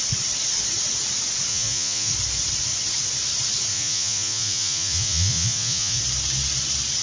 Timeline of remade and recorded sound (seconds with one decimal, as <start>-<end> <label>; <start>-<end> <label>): 0.0-1.5 recorded; 1.5-2.1 remade; 2.1-3.7 recorded; 3.7-6.0 remade; 6.0-7.0 recorded